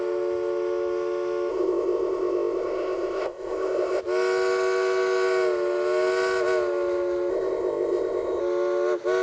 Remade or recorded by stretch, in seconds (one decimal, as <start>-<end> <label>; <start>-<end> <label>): 0.0-1.5 recorded; 1.5-4.0 remade; 4.0-7.3 recorded; 7.3-8.4 remade; 8.4-9.2 recorded